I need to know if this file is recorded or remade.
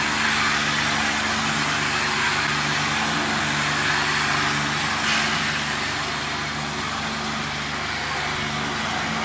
recorded